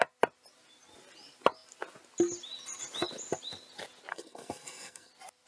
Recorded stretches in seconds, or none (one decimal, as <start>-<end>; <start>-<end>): 0.0-4.1; 5.1-5.5